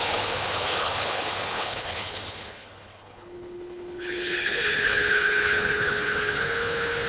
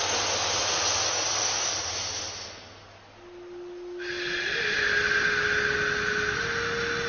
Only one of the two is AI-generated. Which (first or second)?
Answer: first